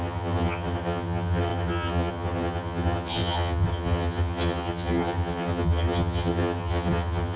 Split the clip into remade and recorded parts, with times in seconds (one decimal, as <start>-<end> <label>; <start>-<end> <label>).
0.0-7.4 remade